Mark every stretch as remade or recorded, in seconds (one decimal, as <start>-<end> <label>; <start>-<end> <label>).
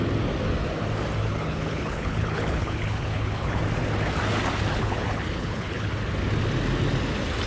0.0-1.2 recorded; 1.2-3.6 remade; 3.6-4.7 recorded; 4.7-5.9 remade; 5.9-7.5 recorded